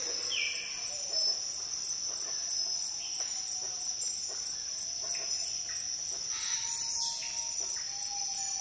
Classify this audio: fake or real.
real